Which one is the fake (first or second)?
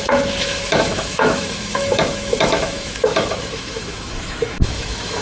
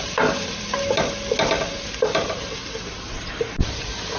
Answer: first